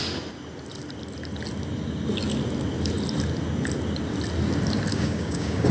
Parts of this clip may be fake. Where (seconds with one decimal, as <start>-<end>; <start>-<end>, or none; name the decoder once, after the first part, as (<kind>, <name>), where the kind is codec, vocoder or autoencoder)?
4.9-5.7 (codec, DAC)